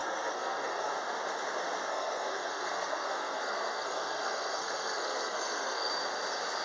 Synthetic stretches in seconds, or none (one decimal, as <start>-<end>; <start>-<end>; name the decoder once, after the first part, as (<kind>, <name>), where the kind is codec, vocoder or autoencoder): 0.0-0.9 (codec, SNAC); 1.9-5.9